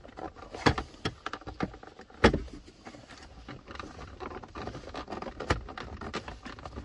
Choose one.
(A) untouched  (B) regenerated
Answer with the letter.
A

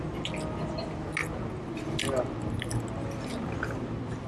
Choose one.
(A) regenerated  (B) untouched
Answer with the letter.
B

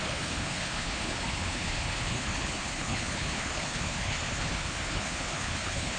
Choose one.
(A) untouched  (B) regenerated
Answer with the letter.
B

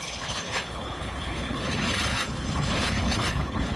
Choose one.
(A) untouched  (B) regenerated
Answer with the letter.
B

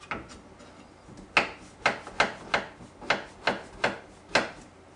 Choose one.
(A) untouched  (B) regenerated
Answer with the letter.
A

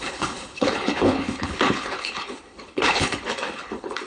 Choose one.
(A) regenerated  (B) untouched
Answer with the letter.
A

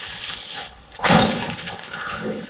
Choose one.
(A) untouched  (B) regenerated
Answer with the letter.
B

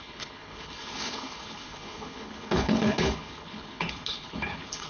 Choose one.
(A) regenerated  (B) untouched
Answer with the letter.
A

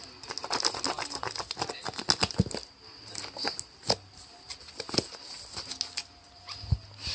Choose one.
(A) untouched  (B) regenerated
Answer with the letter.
A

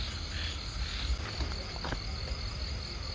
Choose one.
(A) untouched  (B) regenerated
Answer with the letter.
A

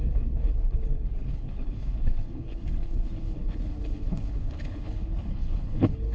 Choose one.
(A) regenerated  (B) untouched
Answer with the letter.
A